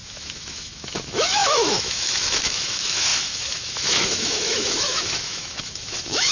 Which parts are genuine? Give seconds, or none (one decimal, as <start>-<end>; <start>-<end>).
none